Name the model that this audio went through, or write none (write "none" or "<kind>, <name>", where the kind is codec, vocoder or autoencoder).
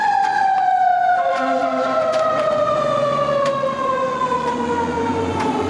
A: vocoder, Vocos